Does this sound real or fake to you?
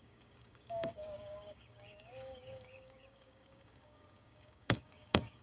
fake